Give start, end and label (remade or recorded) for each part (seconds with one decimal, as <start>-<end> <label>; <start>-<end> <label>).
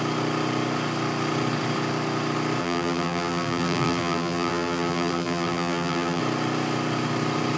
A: 0.0-2.6 recorded; 2.6-6.2 remade; 6.2-7.6 recorded